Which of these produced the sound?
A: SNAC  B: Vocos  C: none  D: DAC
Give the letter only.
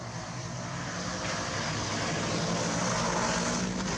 C